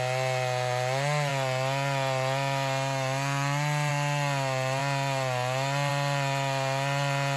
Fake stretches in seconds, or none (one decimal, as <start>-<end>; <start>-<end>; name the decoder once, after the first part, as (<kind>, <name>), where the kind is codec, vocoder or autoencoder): none